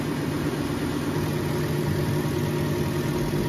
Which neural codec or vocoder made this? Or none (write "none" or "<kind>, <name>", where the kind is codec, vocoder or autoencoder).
none